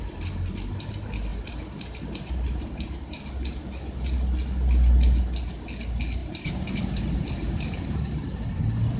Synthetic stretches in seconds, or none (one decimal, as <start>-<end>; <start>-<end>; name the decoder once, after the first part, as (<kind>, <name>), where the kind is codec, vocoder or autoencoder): 1.3-3.6 (vocoder, BigVGAN v2); 6.2-8.2